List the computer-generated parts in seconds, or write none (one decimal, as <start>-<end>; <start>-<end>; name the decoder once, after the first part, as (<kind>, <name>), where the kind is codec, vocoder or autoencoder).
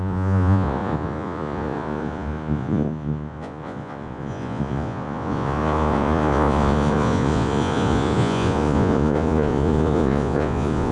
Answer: 0.0-10.9 (vocoder, Vocos)